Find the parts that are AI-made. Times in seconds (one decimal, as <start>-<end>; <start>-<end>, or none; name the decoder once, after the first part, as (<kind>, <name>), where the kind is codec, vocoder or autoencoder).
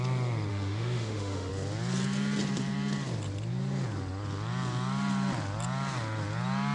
0.5-1.5 (autoencoder, DAC-VAE)